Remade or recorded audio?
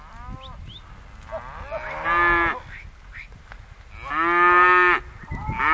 recorded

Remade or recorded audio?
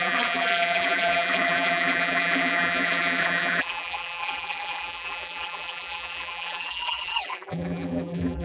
remade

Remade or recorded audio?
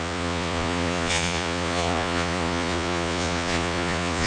remade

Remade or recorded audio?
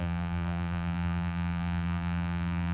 remade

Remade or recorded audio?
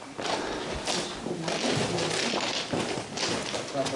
recorded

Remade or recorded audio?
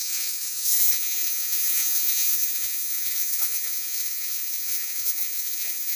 remade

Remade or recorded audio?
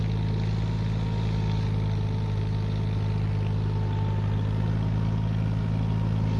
recorded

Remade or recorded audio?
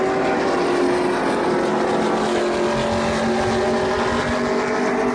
recorded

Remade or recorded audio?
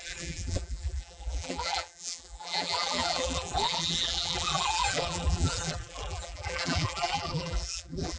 remade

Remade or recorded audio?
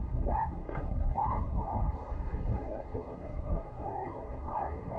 remade